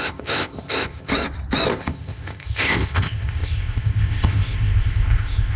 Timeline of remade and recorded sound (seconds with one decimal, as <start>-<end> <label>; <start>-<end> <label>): 0.0-1.1 remade; 1.1-1.7 recorded; 1.7-5.6 remade